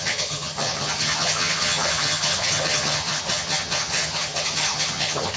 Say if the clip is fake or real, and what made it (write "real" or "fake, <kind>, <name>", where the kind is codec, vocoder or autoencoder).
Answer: fake, vocoder, HiFi-GAN